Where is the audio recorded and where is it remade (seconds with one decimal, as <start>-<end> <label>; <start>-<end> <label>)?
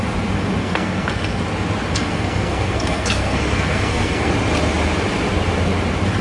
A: 0.0-0.6 recorded; 0.6-1.4 remade; 1.4-1.9 recorded; 1.9-4.3 remade; 4.3-6.2 recorded